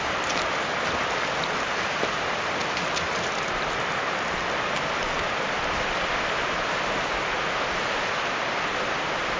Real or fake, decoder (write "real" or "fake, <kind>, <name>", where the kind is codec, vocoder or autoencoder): real